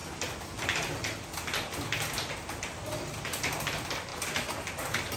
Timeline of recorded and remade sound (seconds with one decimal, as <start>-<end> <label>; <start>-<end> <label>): 0.0-5.2 recorded